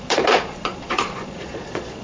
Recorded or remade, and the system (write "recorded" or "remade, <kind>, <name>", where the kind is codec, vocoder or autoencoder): remade, vocoder, Vocos